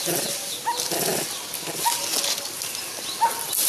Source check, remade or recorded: recorded